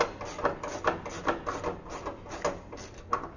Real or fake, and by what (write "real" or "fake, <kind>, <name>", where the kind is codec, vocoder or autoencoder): real